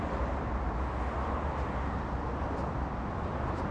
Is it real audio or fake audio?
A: real